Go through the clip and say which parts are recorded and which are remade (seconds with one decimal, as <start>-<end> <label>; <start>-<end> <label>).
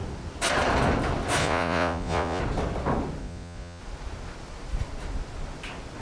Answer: 0.0-1.4 recorded; 1.4-2.4 remade; 2.4-3.2 recorded; 3.2-3.8 remade; 3.8-6.0 recorded